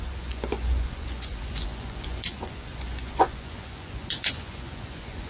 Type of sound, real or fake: fake